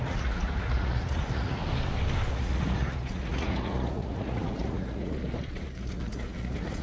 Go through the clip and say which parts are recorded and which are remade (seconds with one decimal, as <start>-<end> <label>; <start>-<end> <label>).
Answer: 0.0-1.6 remade; 1.6-2.3 recorded; 2.3-6.8 remade